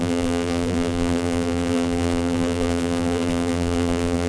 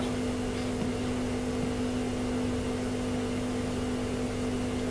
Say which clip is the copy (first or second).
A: first